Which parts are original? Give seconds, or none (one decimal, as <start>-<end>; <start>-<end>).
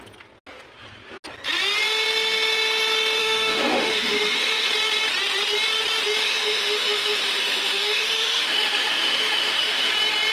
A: 0.0-3.2; 4.7-6.2; 9.9-10.3